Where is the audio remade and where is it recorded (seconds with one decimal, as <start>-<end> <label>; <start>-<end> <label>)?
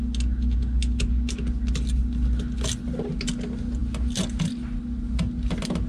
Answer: 0.0-5.9 recorded